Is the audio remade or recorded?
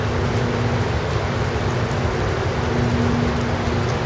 recorded